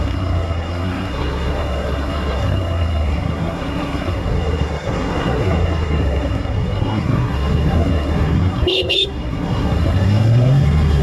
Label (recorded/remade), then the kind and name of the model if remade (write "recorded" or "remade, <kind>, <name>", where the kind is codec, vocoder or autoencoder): remade, codec, SNAC